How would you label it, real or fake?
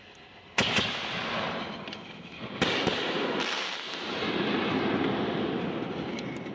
real